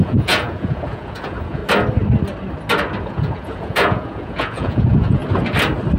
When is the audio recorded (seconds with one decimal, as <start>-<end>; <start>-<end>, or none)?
1.6-3.0; 5.2-6.0